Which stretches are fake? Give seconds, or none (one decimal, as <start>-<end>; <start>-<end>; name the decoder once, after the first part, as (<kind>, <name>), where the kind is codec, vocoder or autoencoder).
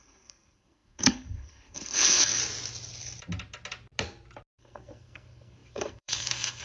0.0-2.4 (codec, SNAC); 4.5-6.6